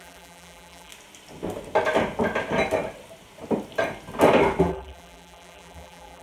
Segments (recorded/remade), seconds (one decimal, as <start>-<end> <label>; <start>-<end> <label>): 0.0-0.9 remade; 0.9-4.6 recorded; 4.6-6.2 remade